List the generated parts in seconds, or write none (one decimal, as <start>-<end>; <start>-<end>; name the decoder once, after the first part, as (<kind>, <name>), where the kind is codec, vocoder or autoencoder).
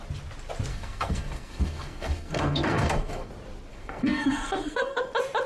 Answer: 0.7-3.3 (codec, SNAC); 3.7-5.0